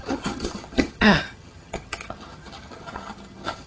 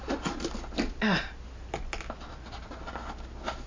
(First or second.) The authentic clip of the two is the second